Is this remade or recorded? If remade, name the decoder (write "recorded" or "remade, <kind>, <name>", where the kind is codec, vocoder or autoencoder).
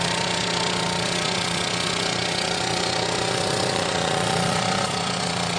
remade, vocoder, Vocos